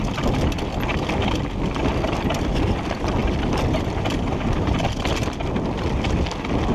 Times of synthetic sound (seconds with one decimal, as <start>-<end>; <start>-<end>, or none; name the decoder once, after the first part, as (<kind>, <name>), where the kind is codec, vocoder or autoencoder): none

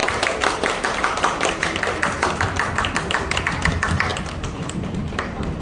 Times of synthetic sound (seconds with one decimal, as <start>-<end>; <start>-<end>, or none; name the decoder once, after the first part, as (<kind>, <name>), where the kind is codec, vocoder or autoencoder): 0.0-3.4 (vocoder, BigVGAN v2)

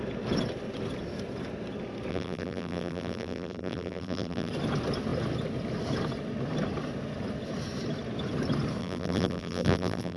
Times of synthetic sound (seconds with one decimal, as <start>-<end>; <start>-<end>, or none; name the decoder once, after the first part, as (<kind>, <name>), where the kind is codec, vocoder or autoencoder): 2.1-4.5 (vocoder, BigVGAN v2); 8.8-10.2

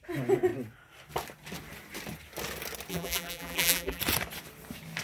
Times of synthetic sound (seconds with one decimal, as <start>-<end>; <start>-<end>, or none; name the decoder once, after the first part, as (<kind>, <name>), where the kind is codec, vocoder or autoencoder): 2.9-4.0 (vocoder, BigVGAN v2)

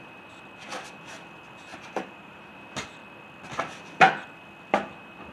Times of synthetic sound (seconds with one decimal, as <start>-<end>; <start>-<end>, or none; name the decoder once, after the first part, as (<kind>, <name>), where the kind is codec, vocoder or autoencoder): 1.7-2.5 (vocoder, BigVGAN v2)